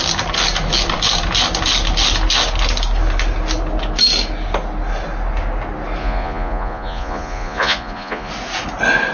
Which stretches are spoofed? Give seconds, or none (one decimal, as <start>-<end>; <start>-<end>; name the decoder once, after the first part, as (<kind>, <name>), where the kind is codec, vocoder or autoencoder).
6.0-8.3 (vocoder, Vocos)